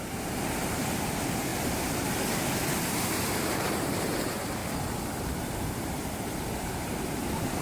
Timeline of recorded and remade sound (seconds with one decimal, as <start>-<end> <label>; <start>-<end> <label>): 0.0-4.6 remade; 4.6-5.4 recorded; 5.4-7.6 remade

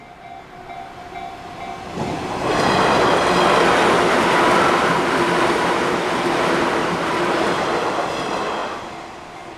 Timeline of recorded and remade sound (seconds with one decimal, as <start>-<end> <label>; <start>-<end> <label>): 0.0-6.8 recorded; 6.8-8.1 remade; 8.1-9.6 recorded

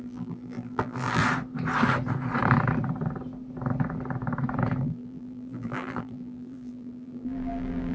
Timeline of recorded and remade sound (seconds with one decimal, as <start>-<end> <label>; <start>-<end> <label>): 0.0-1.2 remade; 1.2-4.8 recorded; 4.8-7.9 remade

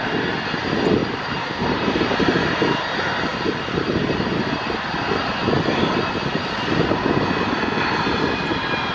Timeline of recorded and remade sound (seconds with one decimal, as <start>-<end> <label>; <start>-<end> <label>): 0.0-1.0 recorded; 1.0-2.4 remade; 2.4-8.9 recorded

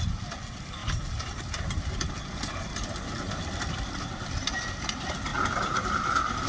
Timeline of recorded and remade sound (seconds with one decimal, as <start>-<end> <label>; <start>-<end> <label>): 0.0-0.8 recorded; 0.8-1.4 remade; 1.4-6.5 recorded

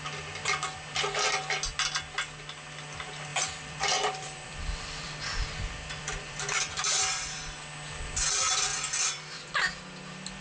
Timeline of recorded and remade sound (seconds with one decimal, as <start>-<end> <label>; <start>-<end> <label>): 0.0-3.3 recorded; 3.3-7.4 remade; 7.4-8.7 recorded; 8.7-9.4 remade; 9.4-10.4 recorded

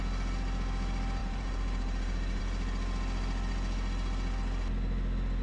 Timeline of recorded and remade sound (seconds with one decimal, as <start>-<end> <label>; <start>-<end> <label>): 0.0-1.2 recorded; 1.2-2.4 remade; 2.4-5.4 recorded

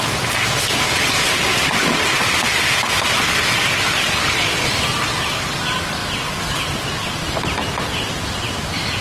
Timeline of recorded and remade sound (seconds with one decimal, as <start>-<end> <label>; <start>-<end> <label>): 0.0-1.5 recorded; 1.5-2.4 remade; 2.4-9.0 recorded